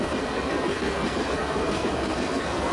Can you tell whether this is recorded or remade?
remade